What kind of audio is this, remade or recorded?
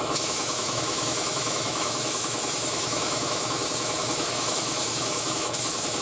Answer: remade